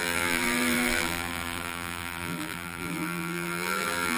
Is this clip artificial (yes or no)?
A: yes